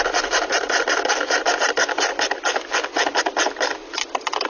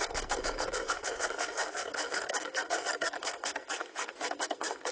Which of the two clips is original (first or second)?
first